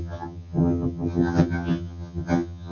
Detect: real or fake fake